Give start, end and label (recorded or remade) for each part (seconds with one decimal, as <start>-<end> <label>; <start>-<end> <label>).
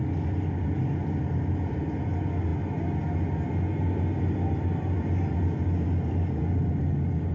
0.0-7.3 recorded